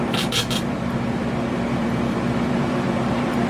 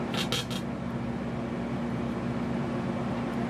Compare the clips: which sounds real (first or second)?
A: second